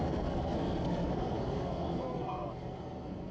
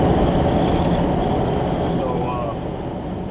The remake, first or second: first